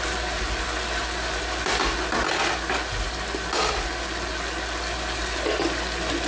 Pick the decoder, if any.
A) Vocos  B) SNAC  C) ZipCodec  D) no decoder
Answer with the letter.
D